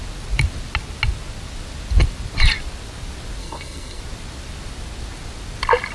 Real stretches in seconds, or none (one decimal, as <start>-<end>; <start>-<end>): 0.0-3.4; 4.0-5.9